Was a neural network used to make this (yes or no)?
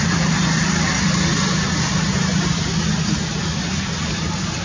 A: no